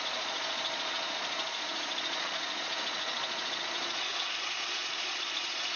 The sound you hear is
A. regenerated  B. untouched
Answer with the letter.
A